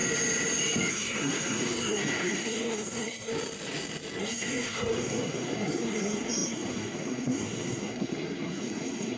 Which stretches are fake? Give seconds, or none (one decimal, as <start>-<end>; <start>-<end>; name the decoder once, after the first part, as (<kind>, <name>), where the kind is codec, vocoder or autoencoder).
0.9-3.3 (codec, SNAC); 4.2-9.2